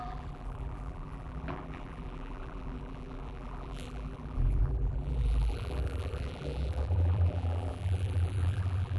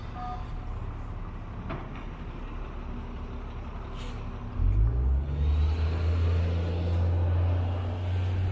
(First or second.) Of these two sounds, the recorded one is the second